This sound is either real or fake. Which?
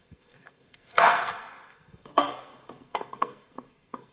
fake